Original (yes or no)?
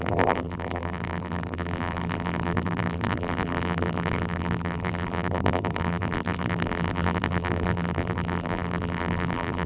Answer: no